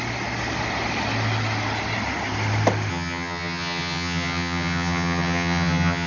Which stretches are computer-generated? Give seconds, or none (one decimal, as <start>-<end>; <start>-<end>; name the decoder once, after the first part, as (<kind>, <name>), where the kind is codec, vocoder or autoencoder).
2.9-6.1 (vocoder, HiFi-GAN)